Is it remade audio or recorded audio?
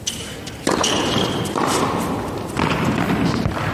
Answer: remade